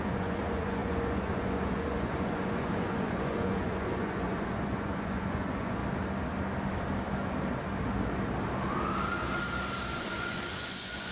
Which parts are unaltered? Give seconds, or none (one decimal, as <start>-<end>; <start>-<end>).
5.8-10.0